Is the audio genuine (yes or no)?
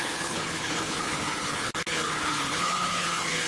no